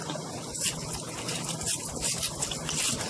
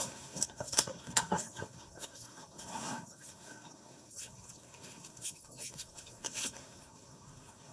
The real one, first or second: first